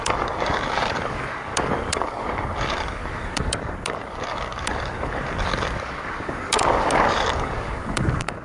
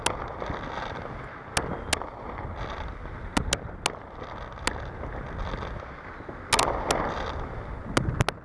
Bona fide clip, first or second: second